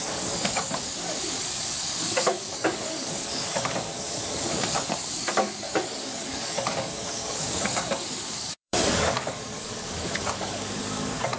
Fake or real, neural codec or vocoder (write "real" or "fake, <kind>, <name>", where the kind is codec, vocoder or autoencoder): fake, codec, DAC